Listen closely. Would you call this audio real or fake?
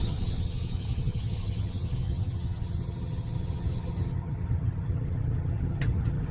fake